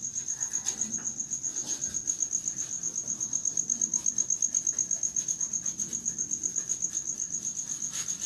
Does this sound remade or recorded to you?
recorded